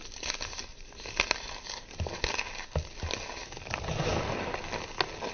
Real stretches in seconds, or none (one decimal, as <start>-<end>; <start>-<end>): 0.0-0.7; 1.9-3.4; 4.2-5.3